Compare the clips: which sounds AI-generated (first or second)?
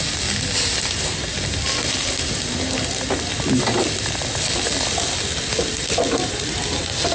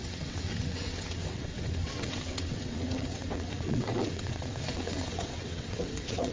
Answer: second